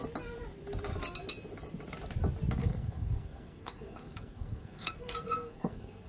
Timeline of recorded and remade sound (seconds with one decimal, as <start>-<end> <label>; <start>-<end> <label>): 0.0-2.6 recorded; 2.6-6.1 remade